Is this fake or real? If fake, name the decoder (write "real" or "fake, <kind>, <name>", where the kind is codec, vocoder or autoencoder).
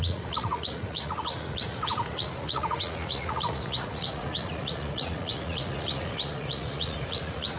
fake, vocoder, Vocos